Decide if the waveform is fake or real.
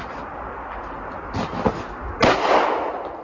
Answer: real